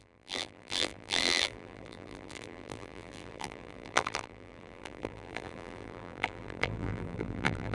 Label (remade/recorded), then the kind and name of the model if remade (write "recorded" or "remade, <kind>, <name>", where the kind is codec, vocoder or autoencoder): remade, vocoder, BigVGAN v2